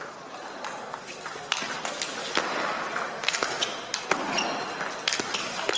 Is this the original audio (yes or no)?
yes